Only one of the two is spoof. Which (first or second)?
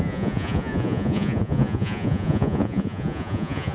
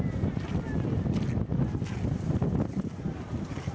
first